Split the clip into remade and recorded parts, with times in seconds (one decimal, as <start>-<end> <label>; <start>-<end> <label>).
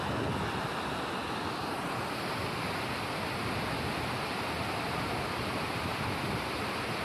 0.0-7.0 recorded